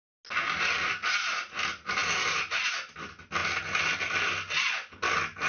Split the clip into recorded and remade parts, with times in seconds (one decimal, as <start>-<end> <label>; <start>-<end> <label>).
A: 0.0-5.5 recorded